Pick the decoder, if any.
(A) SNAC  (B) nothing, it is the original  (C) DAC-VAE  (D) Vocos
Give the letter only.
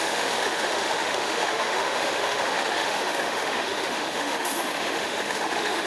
C